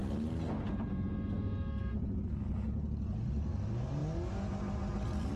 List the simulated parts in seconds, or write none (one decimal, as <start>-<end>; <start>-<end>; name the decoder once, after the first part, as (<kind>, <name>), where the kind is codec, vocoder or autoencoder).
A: none